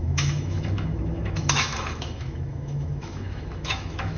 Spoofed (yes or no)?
yes